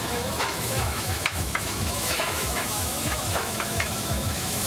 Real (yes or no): no